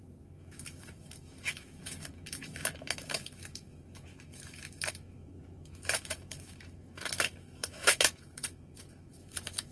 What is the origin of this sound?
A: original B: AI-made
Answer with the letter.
B